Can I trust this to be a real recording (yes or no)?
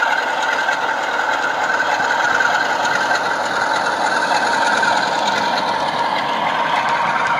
yes